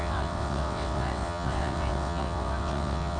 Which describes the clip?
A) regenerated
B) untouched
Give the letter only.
A